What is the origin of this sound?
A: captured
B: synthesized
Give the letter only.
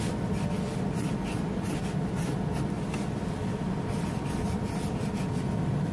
A